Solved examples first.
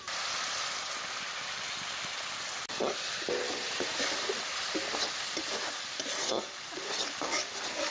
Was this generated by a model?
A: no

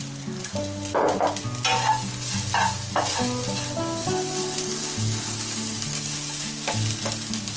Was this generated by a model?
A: no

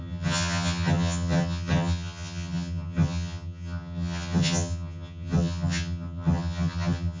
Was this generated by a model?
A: yes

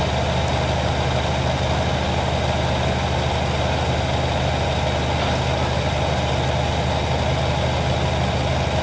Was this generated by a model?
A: no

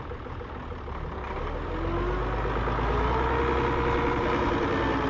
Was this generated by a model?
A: no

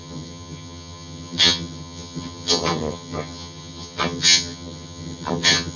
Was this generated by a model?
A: yes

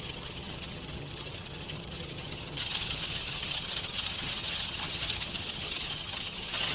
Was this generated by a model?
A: yes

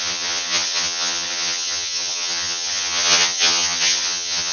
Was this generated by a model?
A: yes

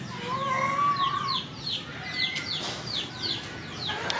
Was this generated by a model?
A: no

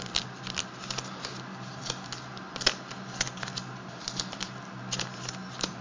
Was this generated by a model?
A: no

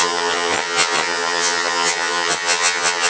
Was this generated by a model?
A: yes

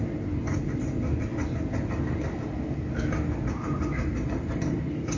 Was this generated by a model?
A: no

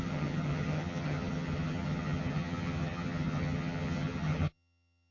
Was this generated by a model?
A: yes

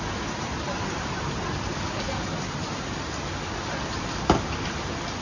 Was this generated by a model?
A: no